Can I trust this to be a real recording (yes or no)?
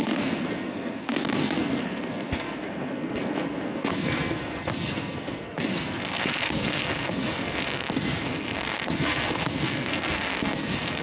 no